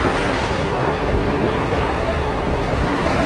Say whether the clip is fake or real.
fake